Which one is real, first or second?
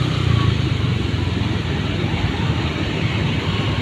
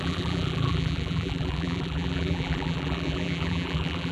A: first